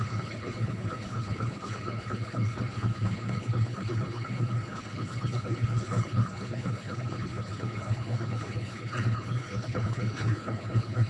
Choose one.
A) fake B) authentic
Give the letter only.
A